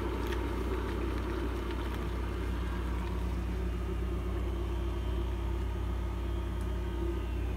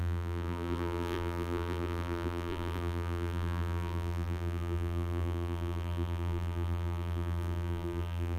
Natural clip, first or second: first